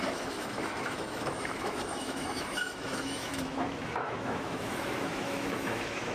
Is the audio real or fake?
fake